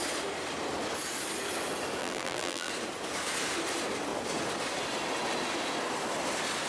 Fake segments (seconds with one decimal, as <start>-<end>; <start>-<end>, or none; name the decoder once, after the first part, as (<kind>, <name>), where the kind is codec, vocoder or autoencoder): 2.0-2.7 (vocoder, BigVGAN v2)